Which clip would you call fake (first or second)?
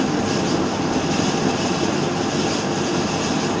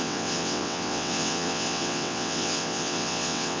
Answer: second